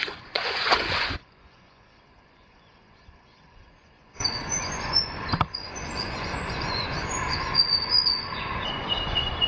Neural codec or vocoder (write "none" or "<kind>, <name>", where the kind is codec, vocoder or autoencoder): vocoder, Vocos